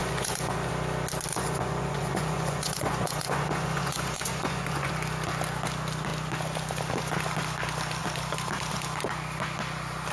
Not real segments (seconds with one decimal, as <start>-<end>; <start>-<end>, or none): 0.0-0.7; 1.3-4.9